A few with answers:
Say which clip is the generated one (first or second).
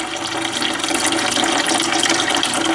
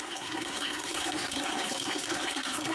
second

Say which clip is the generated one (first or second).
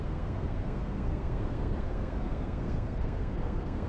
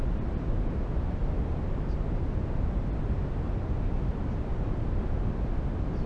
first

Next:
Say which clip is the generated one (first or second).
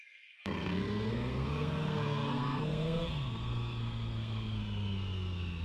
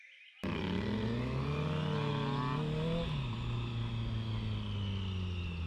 first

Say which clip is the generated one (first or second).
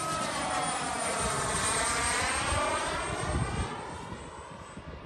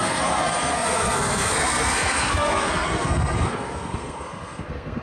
second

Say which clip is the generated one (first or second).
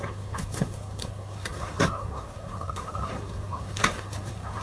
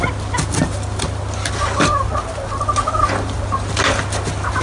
first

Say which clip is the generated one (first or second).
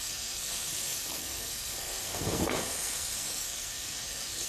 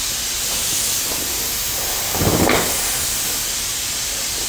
first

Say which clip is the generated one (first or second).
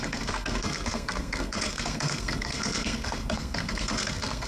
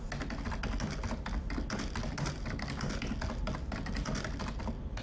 first